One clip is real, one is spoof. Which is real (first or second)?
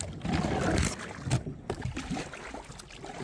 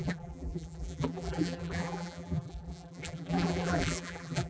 first